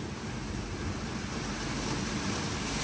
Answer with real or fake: real